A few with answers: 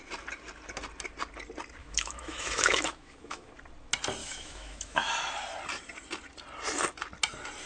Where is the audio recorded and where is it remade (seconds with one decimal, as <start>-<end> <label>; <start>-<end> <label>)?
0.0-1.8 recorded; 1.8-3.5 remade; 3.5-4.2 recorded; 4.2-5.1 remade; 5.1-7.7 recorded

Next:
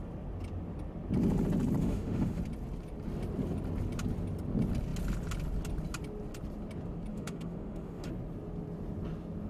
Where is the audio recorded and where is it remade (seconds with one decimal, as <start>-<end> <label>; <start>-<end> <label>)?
0.0-1.8 recorded; 1.8-2.4 remade; 2.4-7.1 recorded; 7.1-8.1 remade; 8.1-9.5 recorded

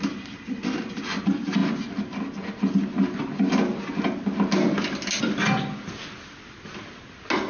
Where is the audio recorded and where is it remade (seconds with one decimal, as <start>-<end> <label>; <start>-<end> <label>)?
0.0-7.5 recorded

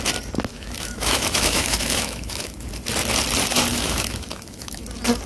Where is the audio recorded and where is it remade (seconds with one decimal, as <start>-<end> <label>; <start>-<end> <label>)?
0.0-0.5 recorded; 0.5-2.7 remade; 2.7-3.7 recorded; 3.7-4.8 remade; 4.8-5.3 recorded

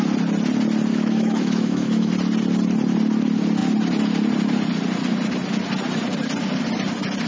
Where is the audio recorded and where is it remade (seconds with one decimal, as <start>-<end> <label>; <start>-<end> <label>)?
0.0-0.9 recorded; 0.9-2.1 remade; 2.1-7.3 recorded

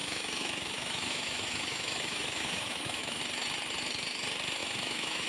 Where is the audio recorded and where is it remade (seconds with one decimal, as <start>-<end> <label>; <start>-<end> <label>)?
0.0-3.2 remade; 3.2-4.6 recorded; 4.6-5.3 remade

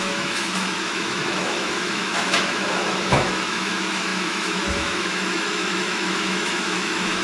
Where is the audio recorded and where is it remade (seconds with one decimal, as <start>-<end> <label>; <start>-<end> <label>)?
0.0-7.2 remade

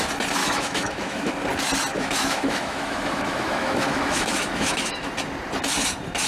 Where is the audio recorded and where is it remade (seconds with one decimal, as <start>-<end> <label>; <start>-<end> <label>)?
0.0-0.4 recorded; 0.4-1.3 remade; 1.3-1.9 recorded; 1.9-5.1 remade; 5.1-6.3 recorded